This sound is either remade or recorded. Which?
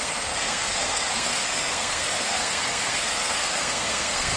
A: remade